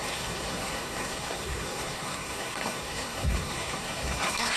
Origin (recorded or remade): remade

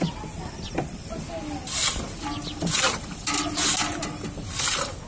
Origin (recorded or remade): recorded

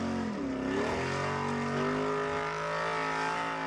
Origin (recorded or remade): recorded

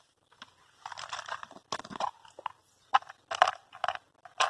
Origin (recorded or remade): recorded